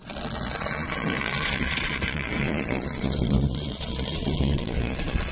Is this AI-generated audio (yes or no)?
yes